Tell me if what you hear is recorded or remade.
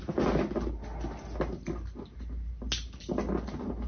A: recorded